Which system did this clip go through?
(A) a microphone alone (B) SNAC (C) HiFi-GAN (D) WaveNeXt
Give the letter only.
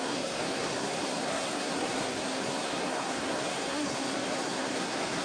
B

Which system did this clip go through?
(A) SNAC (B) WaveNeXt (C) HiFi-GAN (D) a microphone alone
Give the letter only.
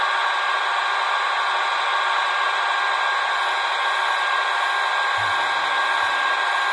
D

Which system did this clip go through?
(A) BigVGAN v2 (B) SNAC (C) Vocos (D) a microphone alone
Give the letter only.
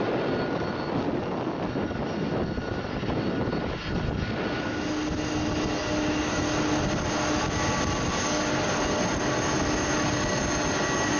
D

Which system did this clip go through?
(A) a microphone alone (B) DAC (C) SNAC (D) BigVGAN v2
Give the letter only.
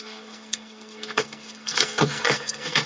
C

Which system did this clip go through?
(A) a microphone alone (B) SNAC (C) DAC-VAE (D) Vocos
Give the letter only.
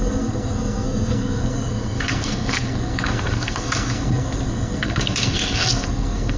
B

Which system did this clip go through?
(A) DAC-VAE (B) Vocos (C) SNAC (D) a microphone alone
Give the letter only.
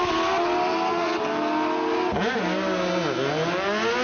D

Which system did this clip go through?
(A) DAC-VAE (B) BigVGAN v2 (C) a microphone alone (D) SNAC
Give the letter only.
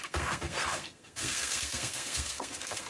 D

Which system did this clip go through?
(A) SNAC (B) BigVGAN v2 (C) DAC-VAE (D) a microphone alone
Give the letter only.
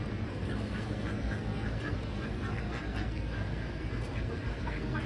A